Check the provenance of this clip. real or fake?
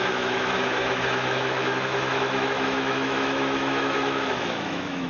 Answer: fake